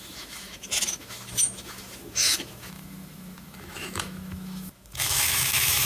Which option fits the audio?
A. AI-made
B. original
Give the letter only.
A